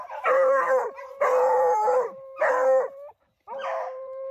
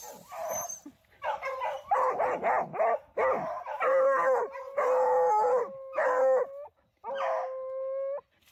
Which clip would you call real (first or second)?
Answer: second